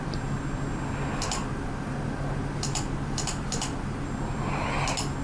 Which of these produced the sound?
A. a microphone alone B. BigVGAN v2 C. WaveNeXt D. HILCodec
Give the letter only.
A